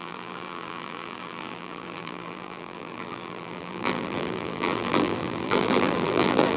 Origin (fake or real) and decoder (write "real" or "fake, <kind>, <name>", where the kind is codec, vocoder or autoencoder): fake, vocoder, BigVGAN v2